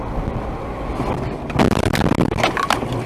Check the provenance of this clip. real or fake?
real